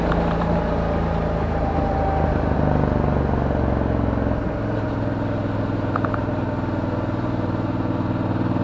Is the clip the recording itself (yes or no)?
yes